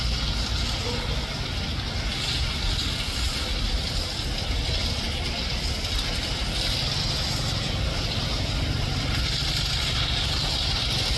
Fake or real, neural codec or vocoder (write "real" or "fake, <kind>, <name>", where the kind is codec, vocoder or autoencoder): real